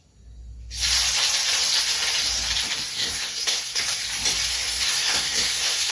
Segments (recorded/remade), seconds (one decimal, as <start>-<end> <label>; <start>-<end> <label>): 0.0-2.9 recorded; 2.9-3.8 remade; 3.8-4.5 recorded; 4.5-5.9 remade